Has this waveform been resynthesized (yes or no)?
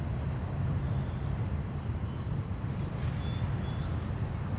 no